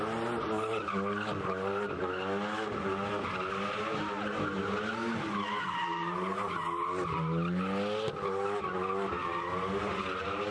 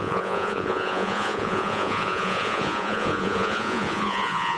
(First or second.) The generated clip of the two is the second